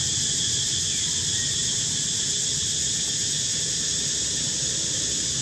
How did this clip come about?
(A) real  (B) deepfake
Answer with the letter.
A